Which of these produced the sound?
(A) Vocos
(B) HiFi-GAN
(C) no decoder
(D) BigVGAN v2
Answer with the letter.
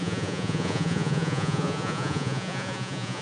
A